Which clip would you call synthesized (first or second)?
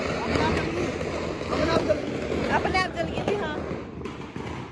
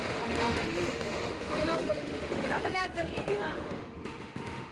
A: second